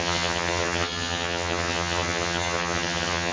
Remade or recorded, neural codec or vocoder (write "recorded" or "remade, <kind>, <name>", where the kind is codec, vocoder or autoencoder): remade, vocoder, HiFi-GAN